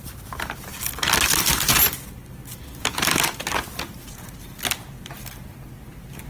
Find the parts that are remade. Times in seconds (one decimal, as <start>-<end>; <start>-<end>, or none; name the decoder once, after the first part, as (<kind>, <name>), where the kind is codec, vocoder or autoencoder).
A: none

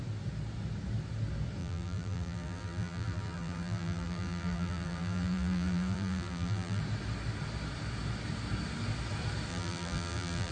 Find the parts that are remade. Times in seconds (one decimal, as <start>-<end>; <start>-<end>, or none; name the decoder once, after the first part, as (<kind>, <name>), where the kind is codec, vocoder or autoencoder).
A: 1.6-6.8 (vocoder, BigVGAN v2); 9.5-10.5

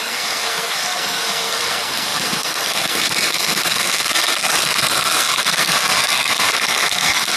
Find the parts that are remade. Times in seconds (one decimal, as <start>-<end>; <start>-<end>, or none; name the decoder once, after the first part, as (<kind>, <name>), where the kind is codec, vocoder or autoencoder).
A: 0.0-7.4 (codec, SNAC)